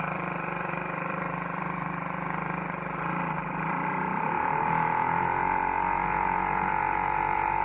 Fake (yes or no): yes